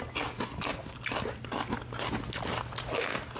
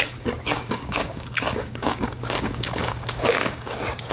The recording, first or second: first